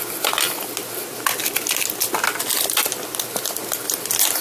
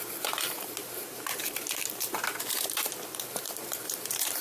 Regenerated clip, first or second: second